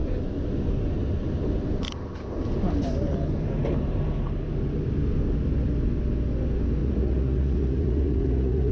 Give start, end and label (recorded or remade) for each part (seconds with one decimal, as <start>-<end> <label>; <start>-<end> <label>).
0.0-6.8 recorded; 6.8-8.7 remade